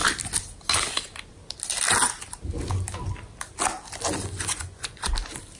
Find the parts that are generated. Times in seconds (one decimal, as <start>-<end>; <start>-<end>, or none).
4.2-5.1